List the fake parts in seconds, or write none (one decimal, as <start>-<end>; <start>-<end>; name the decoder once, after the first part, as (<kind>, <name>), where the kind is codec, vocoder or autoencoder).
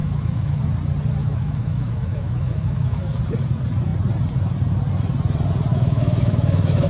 0.0-0.6 (autoencoder, DAC-VAE); 1.2-3.2; 5.7-6.9